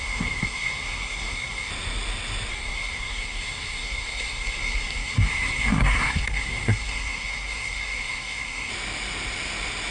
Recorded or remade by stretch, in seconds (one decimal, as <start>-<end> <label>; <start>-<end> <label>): 0.0-1.7 remade; 1.7-2.5 recorded; 2.5-8.7 remade; 8.7-9.9 recorded